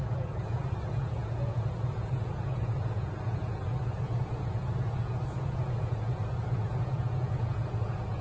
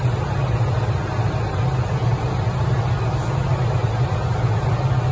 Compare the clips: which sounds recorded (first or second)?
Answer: second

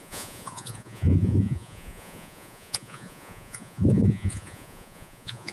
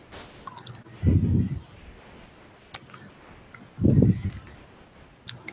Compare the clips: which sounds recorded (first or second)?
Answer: second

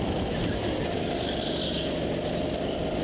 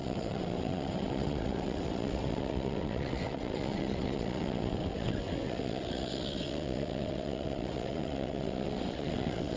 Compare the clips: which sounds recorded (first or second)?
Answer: first